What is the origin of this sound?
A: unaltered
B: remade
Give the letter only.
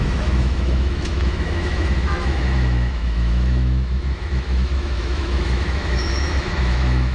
B